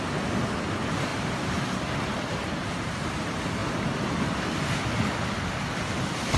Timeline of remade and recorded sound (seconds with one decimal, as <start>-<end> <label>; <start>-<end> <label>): 0.0-1.1 recorded; 1.1-3.2 remade; 3.2-6.4 recorded